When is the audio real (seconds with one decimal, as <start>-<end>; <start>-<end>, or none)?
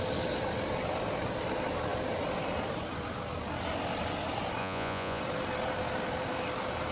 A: 0.0-4.6; 5.2-6.9